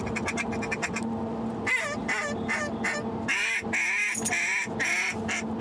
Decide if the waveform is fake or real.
real